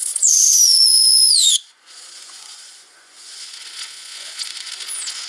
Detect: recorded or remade remade